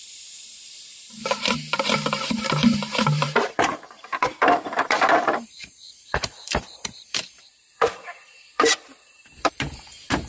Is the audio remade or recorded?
remade